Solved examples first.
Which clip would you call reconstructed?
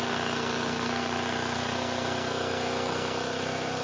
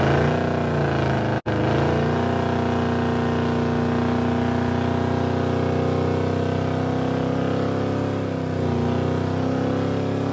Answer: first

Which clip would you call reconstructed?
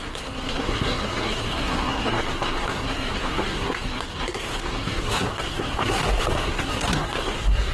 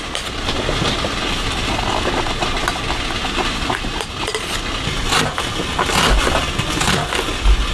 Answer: first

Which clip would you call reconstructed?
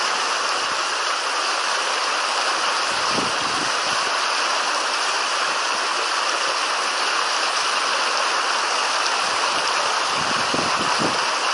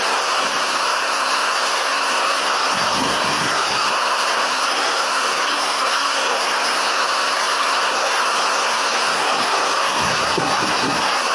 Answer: second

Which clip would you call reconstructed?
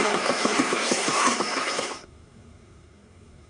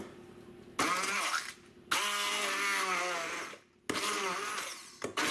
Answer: first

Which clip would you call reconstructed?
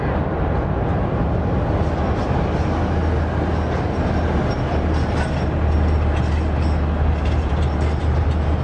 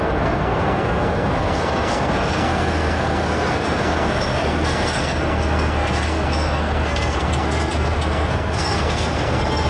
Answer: second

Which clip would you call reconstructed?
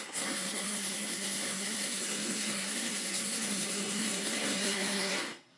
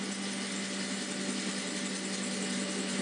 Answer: first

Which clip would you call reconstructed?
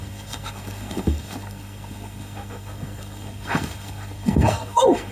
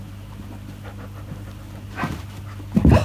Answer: first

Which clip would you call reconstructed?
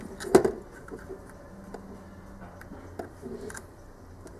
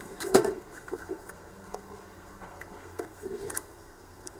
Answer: second